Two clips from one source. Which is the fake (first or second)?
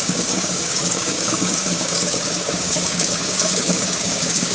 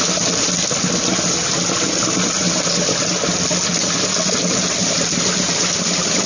first